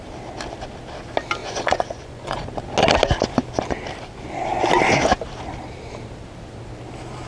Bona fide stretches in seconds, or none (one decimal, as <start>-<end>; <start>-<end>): 0.0-1.4; 2.5-7.3